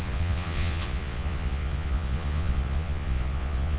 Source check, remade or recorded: remade